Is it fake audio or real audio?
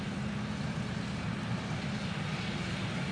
real